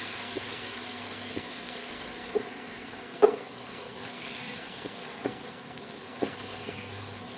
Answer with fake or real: fake